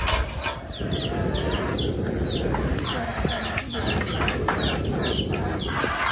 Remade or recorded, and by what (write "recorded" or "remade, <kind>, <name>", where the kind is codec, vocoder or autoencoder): recorded